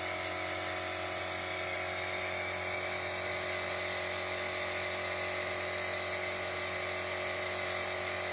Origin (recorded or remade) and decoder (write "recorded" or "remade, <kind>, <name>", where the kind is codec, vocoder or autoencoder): recorded